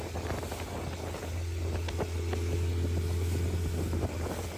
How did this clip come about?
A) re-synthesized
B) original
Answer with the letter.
B